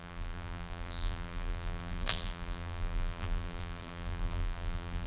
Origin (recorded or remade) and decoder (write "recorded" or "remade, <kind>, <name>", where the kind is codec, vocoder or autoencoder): remade, vocoder, BigVGAN v2